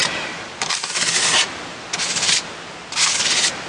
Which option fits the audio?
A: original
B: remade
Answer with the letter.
A